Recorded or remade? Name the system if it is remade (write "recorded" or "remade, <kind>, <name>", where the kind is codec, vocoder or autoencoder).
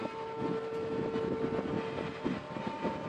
recorded